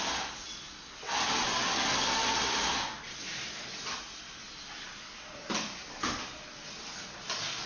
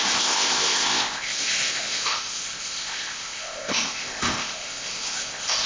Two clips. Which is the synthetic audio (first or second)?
second